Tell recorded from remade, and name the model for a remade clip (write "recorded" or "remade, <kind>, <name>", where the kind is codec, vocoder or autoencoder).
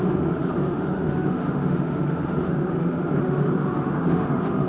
remade, autoencoder, DAC-VAE